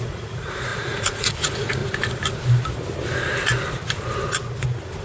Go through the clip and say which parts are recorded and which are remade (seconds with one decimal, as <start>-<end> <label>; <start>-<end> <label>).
0.0-1.8 remade; 1.8-5.0 recorded